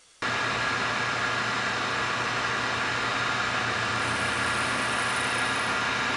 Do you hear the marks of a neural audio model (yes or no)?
no